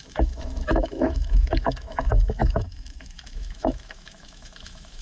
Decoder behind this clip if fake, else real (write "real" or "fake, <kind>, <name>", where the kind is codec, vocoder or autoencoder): fake, autoencoder, DAC-VAE